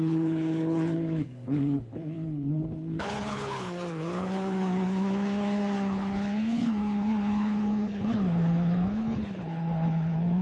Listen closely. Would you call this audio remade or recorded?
remade